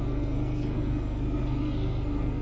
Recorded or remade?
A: remade